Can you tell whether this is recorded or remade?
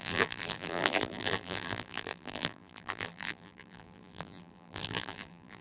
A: remade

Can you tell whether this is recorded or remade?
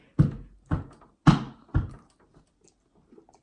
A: recorded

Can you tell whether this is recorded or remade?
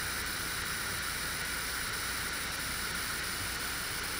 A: recorded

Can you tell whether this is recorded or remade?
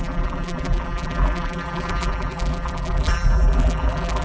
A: remade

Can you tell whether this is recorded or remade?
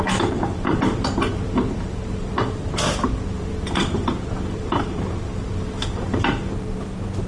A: remade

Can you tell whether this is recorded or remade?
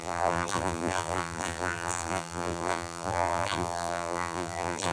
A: remade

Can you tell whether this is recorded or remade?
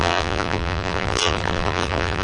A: remade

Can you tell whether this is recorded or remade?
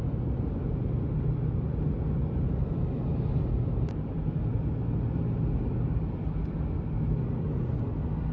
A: recorded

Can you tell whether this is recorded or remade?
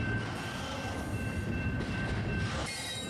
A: remade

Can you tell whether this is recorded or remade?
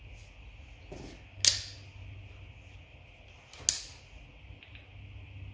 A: recorded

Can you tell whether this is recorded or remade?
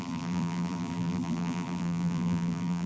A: remade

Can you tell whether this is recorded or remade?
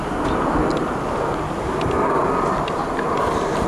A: recorded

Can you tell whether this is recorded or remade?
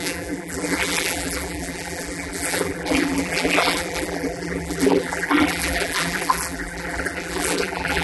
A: remade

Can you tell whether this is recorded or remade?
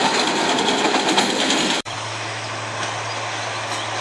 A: remade